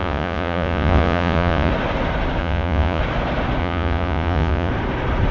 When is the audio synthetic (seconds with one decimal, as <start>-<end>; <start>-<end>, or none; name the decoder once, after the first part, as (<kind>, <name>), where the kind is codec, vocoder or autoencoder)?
0.0-1.7 (vocoder, Vocos); 2.4-3.0; 3.6-4.7